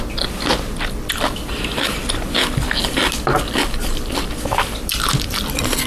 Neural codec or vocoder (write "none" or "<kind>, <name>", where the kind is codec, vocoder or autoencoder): none